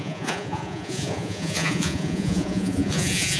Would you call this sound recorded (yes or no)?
no